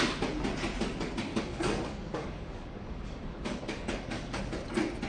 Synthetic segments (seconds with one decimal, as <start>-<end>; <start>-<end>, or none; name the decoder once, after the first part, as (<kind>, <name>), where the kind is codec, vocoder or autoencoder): 1.3-4.4 (codec, DAC)